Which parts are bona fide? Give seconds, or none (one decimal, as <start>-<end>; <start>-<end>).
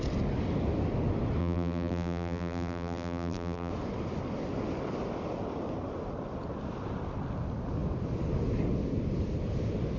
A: 0.0-1.4; 3.7-10.0